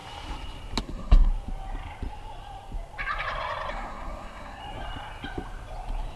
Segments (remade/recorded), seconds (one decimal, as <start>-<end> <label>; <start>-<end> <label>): 0.0-0.8 recorded; 0.8-1.3 remade; 1.3-3.7 recorded; 3.7-4.6 remade; 4.6-6.2 recorded